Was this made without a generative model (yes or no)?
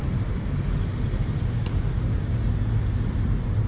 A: yes